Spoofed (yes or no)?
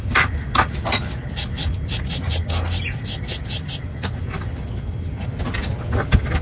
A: no